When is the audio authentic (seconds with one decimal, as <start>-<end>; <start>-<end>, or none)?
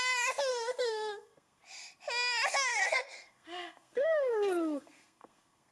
0.0-0.5; 1.6-2.7